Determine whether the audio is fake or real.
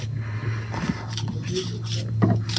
real